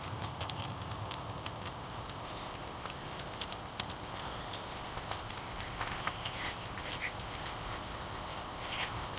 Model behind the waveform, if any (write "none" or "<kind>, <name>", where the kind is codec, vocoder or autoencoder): codec, ZipCodec